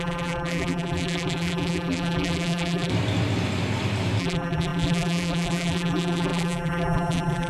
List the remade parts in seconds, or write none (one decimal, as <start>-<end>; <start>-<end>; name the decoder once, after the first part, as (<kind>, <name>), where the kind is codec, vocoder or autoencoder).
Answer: 0.0-2.9 (vocoder, BigVGAN v2); 4.2-7.5